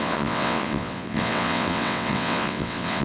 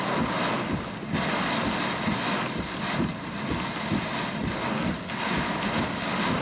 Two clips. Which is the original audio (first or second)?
second